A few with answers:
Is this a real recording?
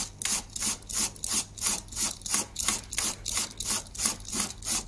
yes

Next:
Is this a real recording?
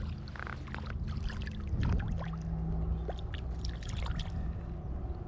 yes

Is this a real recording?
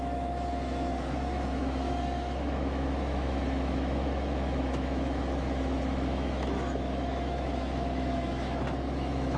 no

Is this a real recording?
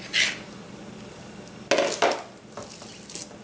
yes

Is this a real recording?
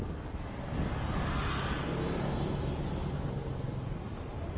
yes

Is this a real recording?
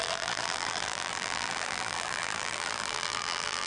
no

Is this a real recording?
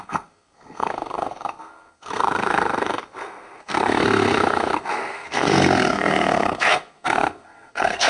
no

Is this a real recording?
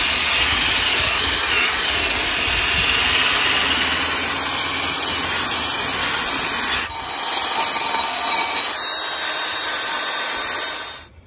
yes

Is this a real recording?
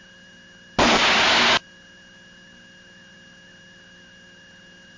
yes